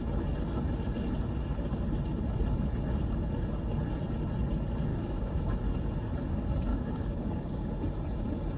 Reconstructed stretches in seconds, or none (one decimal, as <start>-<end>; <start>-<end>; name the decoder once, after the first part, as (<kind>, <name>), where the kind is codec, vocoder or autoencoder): 4.9-5.4 (codec, DAC); 6.7-7.7